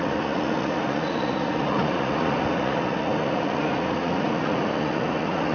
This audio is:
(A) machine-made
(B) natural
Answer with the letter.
A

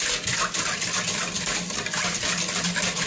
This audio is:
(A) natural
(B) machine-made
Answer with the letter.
A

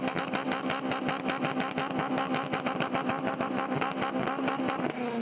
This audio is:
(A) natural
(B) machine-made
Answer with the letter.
A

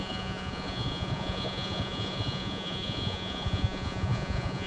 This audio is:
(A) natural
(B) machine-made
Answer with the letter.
B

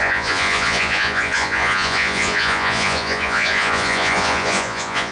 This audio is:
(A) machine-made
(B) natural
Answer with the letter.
A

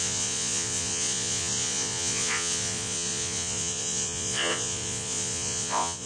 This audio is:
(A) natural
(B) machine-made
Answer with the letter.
B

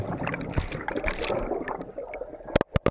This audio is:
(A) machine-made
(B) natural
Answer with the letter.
B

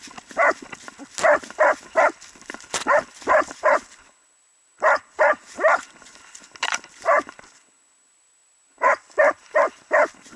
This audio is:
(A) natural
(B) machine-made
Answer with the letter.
A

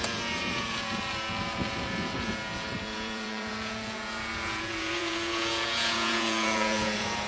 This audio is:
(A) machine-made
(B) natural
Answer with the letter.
A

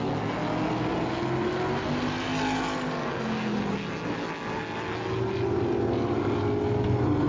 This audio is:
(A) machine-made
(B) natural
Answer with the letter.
B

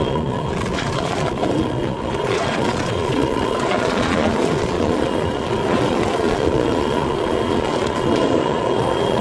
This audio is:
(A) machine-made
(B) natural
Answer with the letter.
A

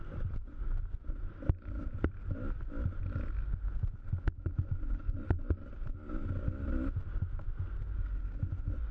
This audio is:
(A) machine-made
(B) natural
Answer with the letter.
B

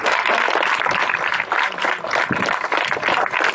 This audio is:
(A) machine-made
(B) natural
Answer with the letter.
B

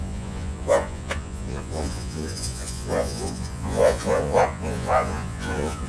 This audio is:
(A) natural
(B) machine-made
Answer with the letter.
B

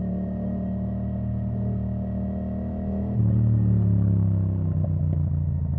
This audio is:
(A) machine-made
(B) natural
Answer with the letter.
B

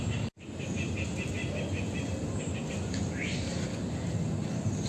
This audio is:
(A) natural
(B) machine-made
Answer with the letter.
A